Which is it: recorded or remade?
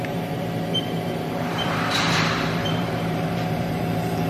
remade